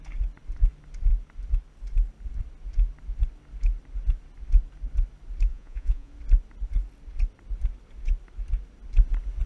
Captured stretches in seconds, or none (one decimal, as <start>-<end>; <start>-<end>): 0.0-5.5; 6.1-9.5